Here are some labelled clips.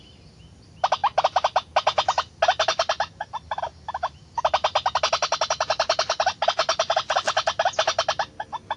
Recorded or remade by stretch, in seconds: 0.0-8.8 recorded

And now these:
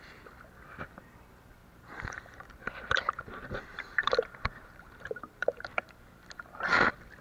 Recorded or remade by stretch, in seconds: 0.0-1.6 recorded; 1.6-5.9 remade; 5.9-7.2 recorded

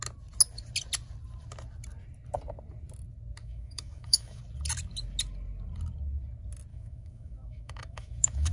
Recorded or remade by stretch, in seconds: 0.0-3.4 recorded; 3.4-4.4 remade; 4.4-6.7 recorded; 6.7-8.5 remade

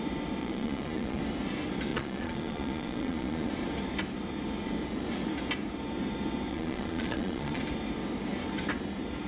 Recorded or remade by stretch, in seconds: 0.0-0.4 recorded; 0.4-1.2 remade; 1.2-1.9 recorded; 1.9-3.5 remade; 3.5-6.5 recorded; 6.5-7.6 remade; 7.6-9.3 recorded